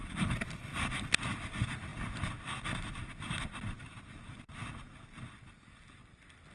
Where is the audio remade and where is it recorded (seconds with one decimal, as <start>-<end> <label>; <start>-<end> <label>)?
0.0-6.5 recorded